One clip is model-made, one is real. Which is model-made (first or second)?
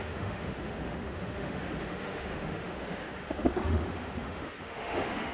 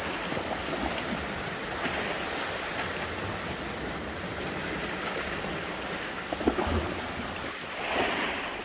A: first